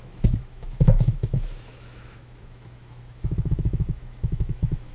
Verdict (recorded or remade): remade